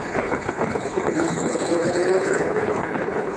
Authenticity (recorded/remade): remade